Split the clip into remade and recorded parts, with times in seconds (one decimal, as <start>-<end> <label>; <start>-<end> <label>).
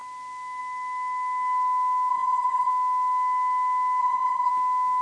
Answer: 0.0-2.1 recorded; 2.1-2.7 remade; 2.7-4.0 recorded; 4.0-4.5 remade; 4.5-5.0 recorded